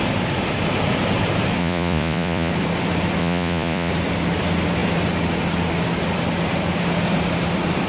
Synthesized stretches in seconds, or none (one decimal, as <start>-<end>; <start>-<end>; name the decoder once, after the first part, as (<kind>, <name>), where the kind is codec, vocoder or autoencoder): 1.6-2.5 (vocoder, Vocos); 3.2-3.9